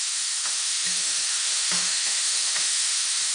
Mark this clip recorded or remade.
remade